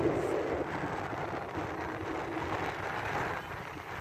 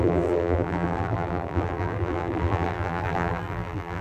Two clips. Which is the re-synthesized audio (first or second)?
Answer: second